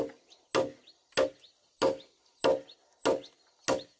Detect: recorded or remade recorded